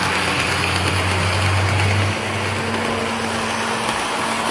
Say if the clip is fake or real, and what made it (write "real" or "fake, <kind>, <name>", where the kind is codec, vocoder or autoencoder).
real